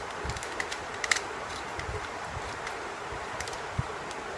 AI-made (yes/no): yes